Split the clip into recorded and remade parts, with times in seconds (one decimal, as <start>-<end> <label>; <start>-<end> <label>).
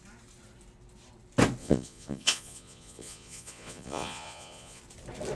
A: 0.0-1.6 recorded; 1.6-4.8 remade; 4.8-5.3 recorded